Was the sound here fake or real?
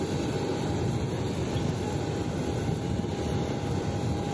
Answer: real